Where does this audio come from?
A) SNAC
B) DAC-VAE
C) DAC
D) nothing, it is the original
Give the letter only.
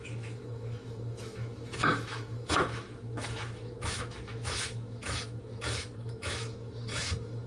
B